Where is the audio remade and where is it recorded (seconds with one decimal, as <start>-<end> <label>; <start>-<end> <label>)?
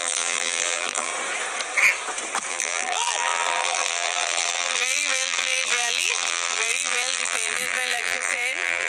0.0-1.1 remade; 1.1-2.5 recorded; 2.5-8.9 remade